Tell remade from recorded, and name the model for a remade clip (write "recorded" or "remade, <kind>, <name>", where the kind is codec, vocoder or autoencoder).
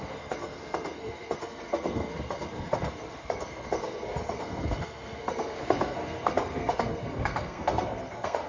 remade, codec, SNAC